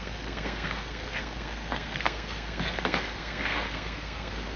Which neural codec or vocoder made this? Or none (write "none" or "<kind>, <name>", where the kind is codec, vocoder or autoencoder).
codec, SNAC